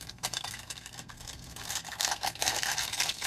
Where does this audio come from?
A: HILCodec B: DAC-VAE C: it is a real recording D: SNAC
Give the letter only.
D